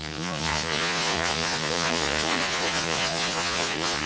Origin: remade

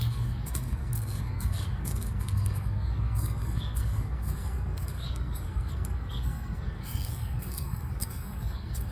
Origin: remade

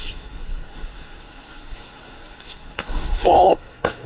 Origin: remade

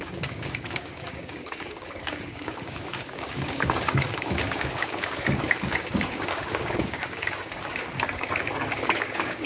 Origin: remade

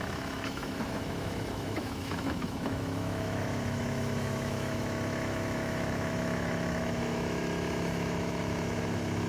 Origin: remade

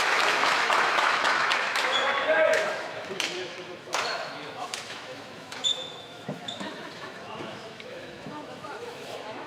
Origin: remade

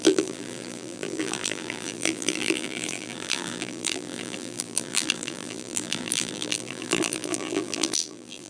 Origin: remade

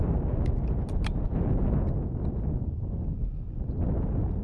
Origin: recorded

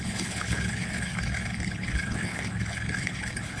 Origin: remade